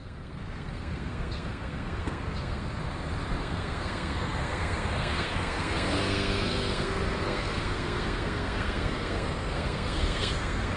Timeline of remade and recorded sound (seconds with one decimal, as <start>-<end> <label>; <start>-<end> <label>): 0.0-2.8 remade; 2.8-3.4 recorded; 3.4-10.8 remade